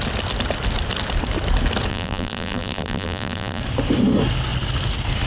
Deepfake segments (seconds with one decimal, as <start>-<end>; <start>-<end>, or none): 1.9-3.6